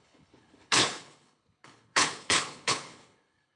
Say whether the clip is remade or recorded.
remade